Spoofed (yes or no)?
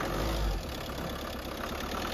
no